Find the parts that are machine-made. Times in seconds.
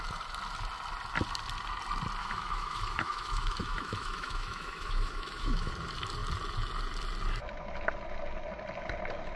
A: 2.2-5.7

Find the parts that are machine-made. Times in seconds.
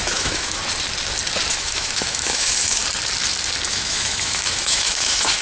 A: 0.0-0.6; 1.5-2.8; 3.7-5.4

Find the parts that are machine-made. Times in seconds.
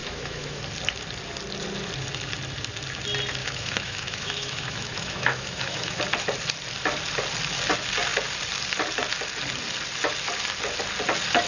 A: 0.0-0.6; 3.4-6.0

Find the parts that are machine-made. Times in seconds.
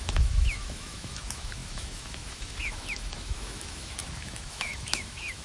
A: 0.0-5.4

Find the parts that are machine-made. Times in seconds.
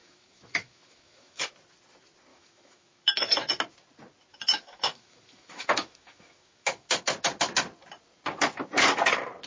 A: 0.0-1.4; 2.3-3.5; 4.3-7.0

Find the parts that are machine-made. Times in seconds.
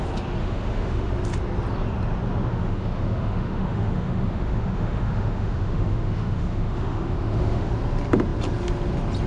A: 0.4-1.1; 2.5-7.7